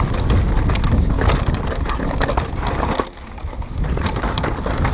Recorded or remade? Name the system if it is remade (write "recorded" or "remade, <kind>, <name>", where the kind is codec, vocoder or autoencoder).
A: recorded